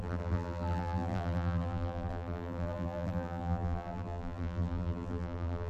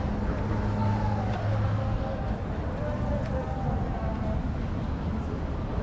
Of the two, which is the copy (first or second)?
first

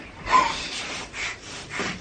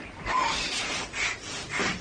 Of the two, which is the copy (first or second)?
first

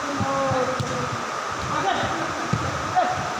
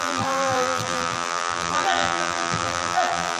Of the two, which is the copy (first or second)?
second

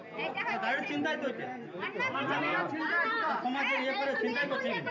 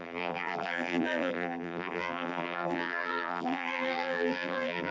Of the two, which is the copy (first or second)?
second